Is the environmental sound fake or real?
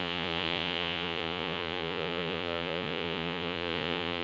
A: fake